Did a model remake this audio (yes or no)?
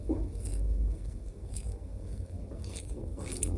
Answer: yes